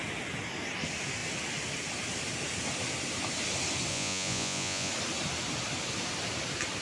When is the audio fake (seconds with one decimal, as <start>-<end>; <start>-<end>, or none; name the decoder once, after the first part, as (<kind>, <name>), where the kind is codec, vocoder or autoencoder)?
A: 3.9-4.9 (vocoder, Vocos)